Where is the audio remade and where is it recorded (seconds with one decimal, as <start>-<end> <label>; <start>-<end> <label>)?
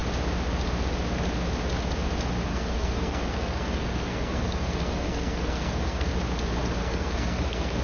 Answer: 0.0-2.5 recorded; 2.5-6.1 remade; 6.1-6.8 recorded; 6.8-7.8 remade